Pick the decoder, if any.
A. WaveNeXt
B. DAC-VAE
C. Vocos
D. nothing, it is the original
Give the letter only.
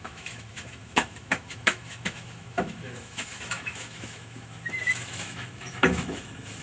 B